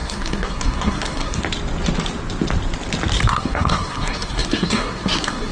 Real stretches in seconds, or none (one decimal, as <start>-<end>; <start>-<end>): 1.4-3.3